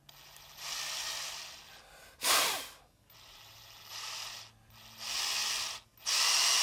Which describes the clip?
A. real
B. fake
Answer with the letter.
A